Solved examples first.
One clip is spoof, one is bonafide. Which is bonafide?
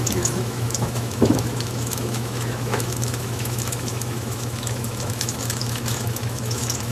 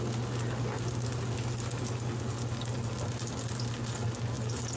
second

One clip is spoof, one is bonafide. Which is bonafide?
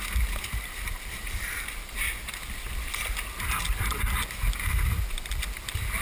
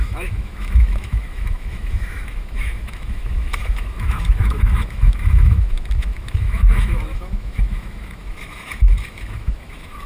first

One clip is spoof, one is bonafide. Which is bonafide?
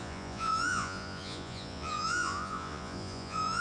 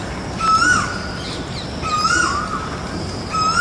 second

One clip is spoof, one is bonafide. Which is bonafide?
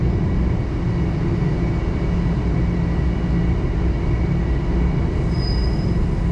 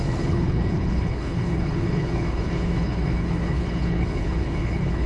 first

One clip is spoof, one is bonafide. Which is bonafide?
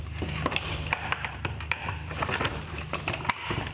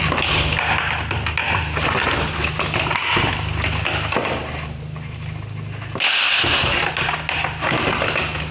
second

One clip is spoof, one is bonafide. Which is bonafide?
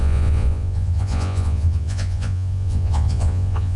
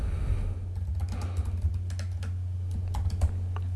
second